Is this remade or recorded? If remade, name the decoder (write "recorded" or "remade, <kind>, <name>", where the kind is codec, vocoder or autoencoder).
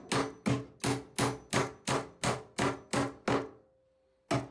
recorded